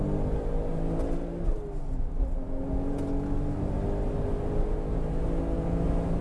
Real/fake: real